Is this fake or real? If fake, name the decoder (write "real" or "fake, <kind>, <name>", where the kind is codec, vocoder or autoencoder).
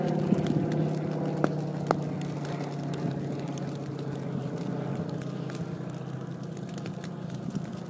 real